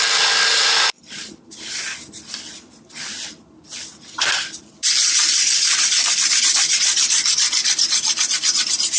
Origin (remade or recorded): remade